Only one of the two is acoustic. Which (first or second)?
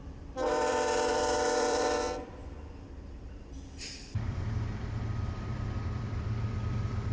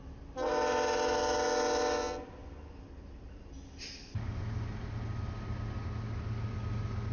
second